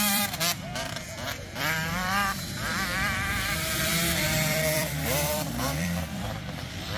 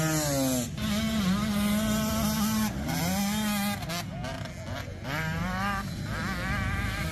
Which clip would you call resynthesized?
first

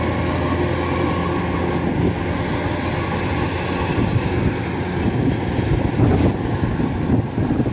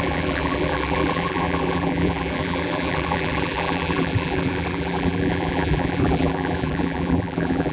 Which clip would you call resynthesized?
second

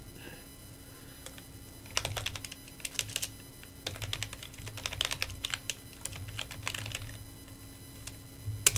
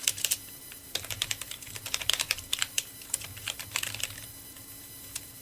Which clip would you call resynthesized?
second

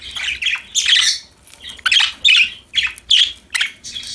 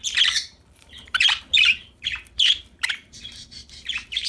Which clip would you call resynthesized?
second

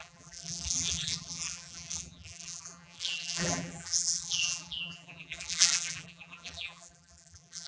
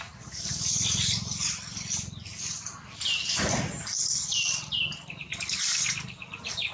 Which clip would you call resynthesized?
first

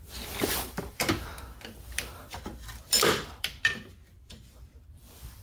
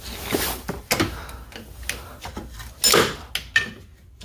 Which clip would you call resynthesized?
first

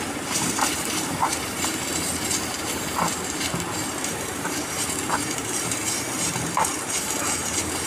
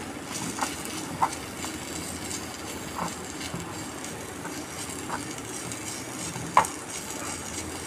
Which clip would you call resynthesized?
first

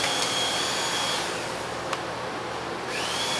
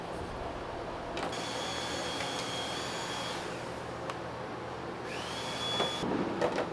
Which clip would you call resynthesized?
first